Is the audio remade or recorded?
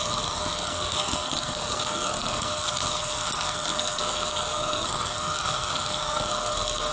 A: remade